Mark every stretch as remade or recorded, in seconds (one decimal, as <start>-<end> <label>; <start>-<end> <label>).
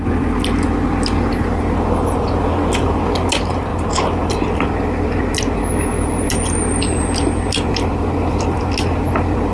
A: 0.0-9.5 recorded